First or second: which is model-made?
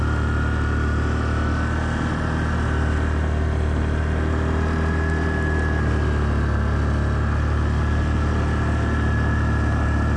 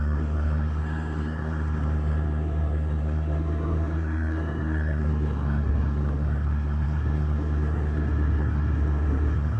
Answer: second